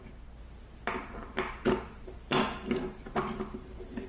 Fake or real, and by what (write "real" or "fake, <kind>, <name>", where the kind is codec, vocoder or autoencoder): real